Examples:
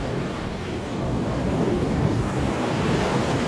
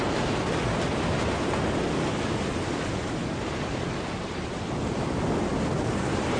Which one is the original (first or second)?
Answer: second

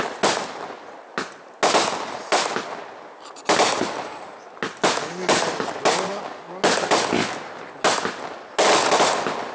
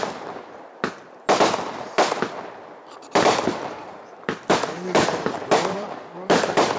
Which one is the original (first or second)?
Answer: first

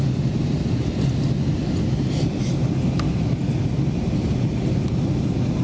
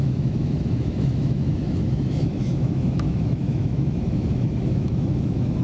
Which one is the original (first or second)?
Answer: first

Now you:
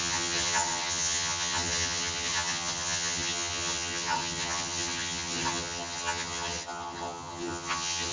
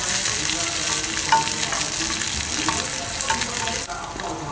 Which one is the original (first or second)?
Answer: second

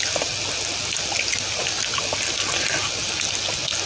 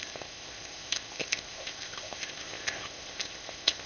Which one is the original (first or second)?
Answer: first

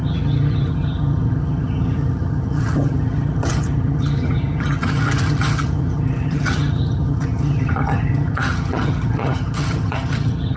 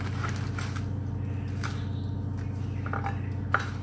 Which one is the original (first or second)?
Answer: second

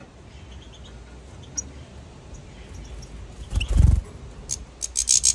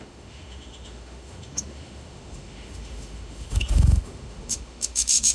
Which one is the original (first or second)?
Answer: first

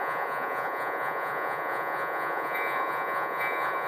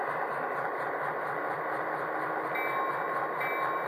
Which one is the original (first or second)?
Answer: second